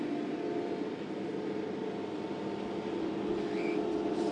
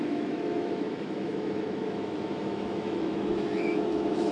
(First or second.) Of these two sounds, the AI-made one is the second